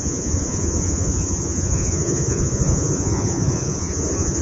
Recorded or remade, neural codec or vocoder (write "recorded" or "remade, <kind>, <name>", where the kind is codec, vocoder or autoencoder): remade, vocoder, Vocos